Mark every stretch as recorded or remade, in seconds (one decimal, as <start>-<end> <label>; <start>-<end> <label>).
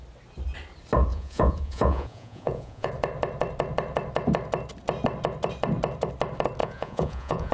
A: 0.0-1.1 recorded; 1.1-2.9 remade; 2.9-6.6 recorded; 6.6-7.5 remade